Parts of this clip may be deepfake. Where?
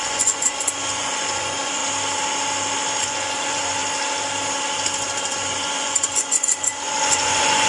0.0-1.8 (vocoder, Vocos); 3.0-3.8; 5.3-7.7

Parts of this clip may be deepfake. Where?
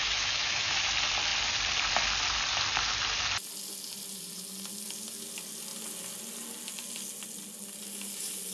0.0-0.7 (autoencoder, DAC-VAE)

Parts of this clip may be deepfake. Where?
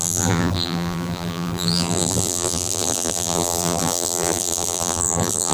0.0-5.5 (vocoder, BigVGAN v2)